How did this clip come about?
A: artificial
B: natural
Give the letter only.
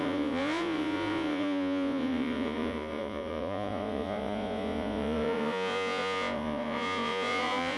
A